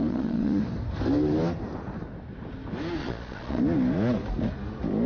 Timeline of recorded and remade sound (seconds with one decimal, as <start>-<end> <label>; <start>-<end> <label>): 0.0-0.6 remade; 0.6-3.0 recorded; 3.0-3.6 remade; 3.6-5.1 recorded